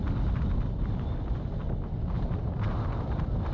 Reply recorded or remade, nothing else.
recorded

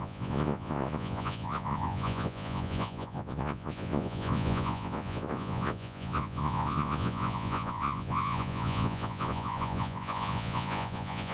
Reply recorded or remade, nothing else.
remade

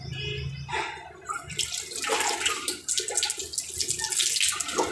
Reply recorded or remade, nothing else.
recorded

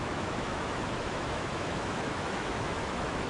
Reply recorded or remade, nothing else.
remade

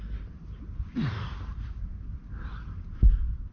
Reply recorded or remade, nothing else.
remade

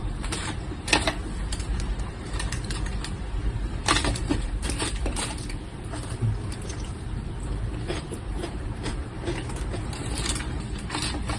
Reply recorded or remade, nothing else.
remade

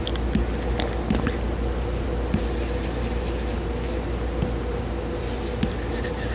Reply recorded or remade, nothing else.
recorded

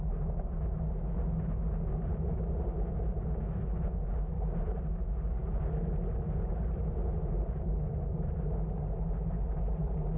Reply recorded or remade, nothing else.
recorded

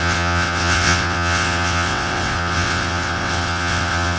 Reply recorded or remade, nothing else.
remade